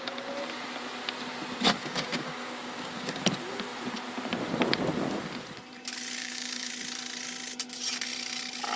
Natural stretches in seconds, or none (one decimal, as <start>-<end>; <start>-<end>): 0.0-1.8; 3.2-6.2; 6.7-8.8